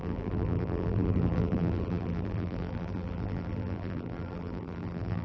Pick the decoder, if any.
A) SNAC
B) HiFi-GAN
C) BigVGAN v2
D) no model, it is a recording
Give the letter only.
C